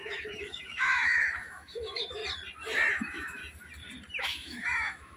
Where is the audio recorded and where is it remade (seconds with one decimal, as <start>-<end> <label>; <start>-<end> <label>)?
0.0-2.2 remade; 2.2-2.9 recorded; 2.9-3.4 remade; 3.4-4.2 recorded; 4.2-5.2 remade